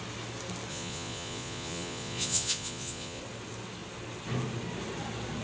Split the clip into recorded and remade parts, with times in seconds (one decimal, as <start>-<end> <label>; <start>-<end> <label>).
0.0-0.7 recorded; 0.7-3.2 remade; 3.2-5.4 recorded